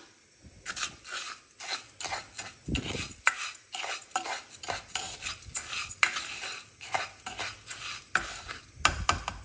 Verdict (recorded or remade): recorded